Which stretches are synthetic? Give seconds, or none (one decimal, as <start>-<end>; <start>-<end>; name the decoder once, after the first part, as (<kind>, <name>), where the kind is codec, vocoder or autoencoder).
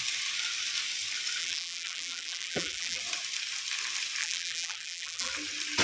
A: 1.4-3.0 (vocoder, BigVGAN v2); 4.2-5.3